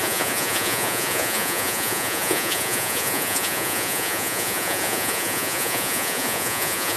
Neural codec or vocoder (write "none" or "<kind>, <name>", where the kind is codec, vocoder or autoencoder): vocoder, Vocos